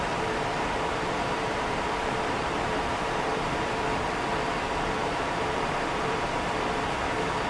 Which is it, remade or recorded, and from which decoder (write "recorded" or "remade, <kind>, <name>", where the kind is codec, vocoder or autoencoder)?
remade, vocoder, BigVGAN v2